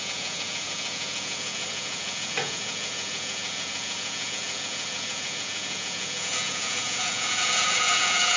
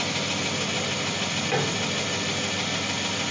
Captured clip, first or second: second